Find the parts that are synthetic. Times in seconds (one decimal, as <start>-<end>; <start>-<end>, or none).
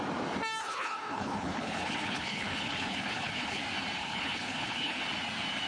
0.6-3.6; 4.0-5.0